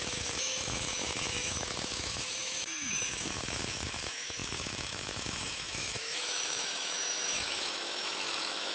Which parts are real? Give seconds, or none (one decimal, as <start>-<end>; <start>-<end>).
none